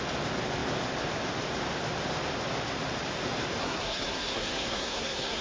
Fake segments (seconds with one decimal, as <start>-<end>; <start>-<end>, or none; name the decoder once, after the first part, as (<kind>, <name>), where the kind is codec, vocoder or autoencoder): 3.6-5.4 (codec, SNAC)